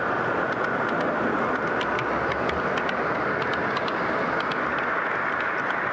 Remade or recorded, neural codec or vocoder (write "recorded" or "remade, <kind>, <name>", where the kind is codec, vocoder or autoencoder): recorded